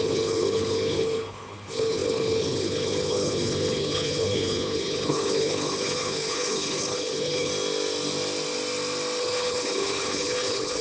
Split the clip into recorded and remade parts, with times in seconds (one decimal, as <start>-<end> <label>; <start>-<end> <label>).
0.0-7.5 remade; 7.5-9.2 recorded; 9.2-10.8 remade

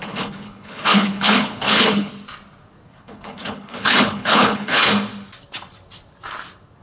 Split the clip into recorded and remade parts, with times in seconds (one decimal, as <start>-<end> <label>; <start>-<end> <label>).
0.0-2.1 remade; 2.1-2.9 recorded; 2.9-4.9 remade; 4.9-6.8 recorded

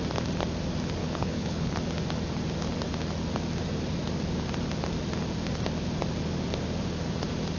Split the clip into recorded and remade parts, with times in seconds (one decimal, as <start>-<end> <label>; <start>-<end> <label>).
0.0-1.0 recorded; 1.0-1.7 remade; 1.7-7.6 recorded

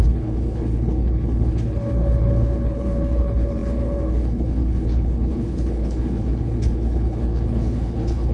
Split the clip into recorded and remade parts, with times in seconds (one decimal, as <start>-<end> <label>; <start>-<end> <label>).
0.0-8.3 remade

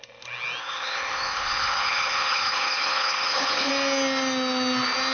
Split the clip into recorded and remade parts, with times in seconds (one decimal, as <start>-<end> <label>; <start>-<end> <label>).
0.0-0.6 recorded; 0.6-3.7 remade; 3.7-5.1 recorded

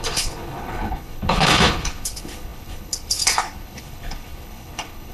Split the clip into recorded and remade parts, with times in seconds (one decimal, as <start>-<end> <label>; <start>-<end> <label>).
0.0-5.1 remade

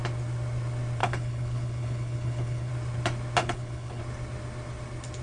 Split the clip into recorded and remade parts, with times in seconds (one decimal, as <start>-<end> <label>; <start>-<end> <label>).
0.0-1.0 recorded; 1.0-2.7 remade; 2.7-3.4 recorded; 3.4-4.0 remade; 4.0-5.2 recorded

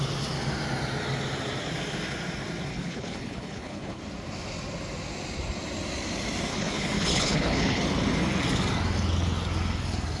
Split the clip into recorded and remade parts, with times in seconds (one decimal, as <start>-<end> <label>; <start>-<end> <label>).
0.0-2.7 recorded; 2.7-4.0 remade; 4.0-6.5 recorded; 6.5-7.8 remade; 7.8-10.2 recorded